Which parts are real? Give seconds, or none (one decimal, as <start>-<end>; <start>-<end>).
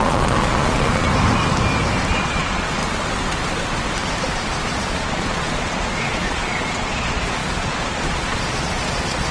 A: 1.1-2.1; 2.8-4.7